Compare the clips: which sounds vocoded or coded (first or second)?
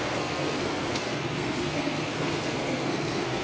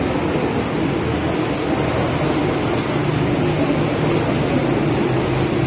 first